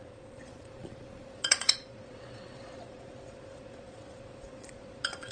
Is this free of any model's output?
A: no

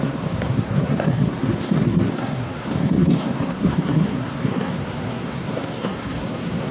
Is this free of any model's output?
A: no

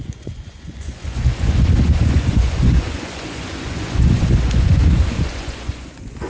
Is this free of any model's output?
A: no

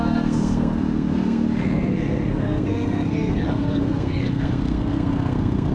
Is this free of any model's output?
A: no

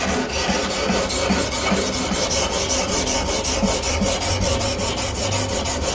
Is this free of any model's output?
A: yes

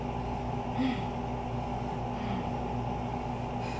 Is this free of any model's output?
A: yes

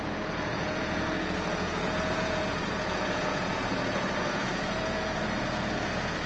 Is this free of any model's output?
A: no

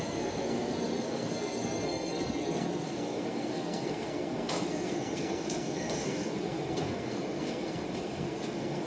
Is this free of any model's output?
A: no